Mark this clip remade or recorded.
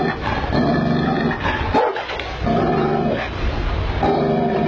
recorded